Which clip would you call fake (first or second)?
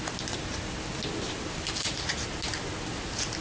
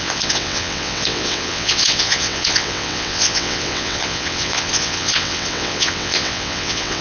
second